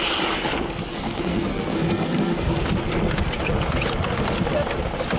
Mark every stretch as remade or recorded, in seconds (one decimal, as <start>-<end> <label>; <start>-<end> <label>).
0.0-0.9 recorded; 0.9-2.6 remade; 2.6-5.2 recorded